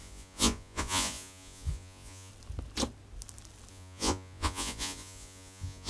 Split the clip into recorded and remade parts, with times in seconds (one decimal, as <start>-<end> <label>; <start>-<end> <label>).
0.0-2.3 remade; 2.3-3.7 recorded; 3.7-5.9 remade